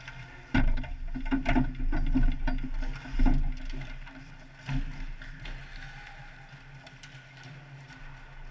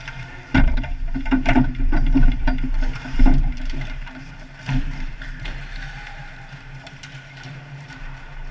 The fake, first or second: second